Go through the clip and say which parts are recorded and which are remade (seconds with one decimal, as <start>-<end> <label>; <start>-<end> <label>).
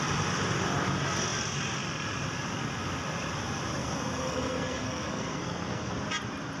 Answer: 0.0-3.8 recorded; 3.8-5.9 remade; 5.9-6.6 recorded